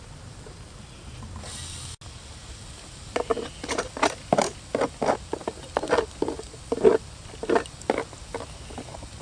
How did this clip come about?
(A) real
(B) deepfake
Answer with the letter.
A